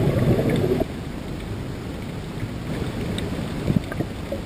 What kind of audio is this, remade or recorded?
recorded